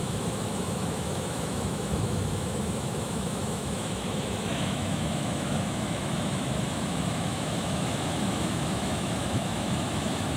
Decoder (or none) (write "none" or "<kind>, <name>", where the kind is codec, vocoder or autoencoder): autoencoder, DAC-VAE